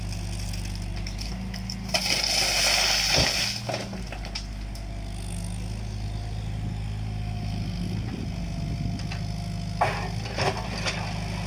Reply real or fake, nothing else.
real